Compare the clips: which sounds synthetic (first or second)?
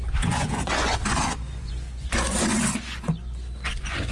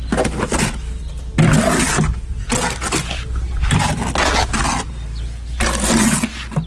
first